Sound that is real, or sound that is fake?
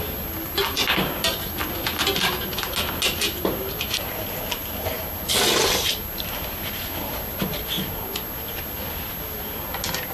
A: real